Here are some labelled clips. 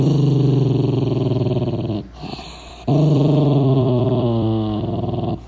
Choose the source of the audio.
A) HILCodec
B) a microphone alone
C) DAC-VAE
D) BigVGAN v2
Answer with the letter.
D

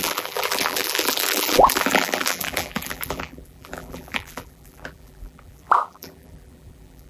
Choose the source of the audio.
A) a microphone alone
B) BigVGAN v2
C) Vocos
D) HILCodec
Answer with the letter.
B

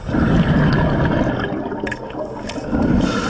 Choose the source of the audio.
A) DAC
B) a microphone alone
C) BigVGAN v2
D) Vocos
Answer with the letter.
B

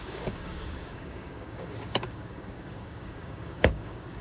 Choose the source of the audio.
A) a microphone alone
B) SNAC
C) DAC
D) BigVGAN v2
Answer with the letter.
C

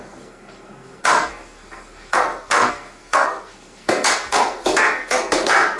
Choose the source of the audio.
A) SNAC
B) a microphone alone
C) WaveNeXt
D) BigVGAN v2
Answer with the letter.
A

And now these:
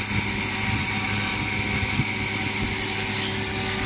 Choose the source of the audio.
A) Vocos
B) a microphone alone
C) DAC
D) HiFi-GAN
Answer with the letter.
B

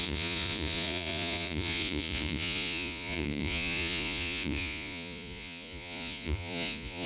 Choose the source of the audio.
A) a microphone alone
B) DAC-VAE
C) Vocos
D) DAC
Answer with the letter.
C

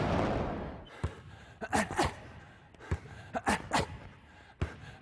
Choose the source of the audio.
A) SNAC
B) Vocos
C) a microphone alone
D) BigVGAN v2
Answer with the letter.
C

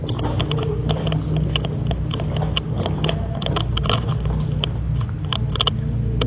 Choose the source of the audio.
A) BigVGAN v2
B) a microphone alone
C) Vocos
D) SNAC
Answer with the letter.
B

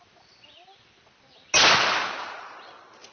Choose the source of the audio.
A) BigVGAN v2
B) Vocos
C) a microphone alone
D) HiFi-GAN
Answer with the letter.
C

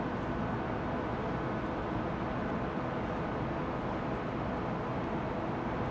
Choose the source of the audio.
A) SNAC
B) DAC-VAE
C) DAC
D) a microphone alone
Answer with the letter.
D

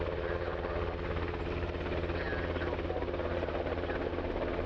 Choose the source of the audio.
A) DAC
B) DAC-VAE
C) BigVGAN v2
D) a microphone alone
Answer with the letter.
D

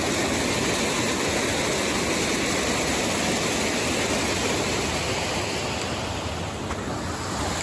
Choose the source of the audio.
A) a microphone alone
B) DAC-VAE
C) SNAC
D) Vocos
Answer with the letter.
A